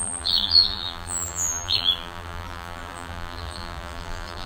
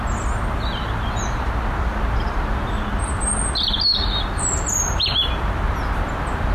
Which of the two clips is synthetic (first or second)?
first